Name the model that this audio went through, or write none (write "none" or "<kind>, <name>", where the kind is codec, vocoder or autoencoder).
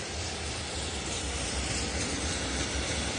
none